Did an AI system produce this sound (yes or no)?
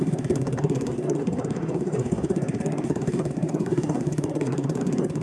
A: yes